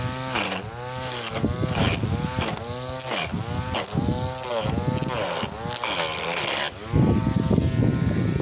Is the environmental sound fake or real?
real